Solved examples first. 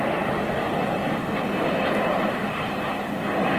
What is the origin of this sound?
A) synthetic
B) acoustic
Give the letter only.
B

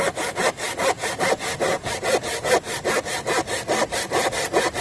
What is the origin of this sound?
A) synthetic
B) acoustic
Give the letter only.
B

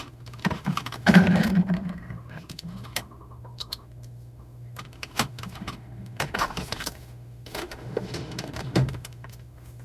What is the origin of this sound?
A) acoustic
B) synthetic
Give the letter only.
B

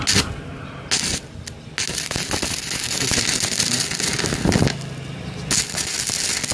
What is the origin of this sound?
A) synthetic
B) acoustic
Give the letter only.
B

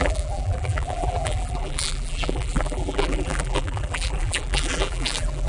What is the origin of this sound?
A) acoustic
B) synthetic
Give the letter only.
B